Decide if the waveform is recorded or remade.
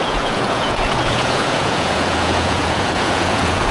remade